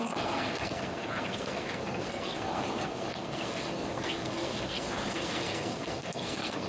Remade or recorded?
remade